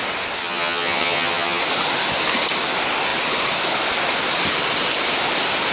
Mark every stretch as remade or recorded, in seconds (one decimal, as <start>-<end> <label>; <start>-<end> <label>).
0.0-0.4 recorded; 0.4-1.6 remade; 1.6-5.7 recorded